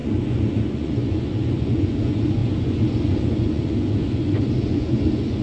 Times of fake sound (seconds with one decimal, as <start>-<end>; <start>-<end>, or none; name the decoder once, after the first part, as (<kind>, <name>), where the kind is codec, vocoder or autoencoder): 0.0-5.4 (vocoder, Vocos)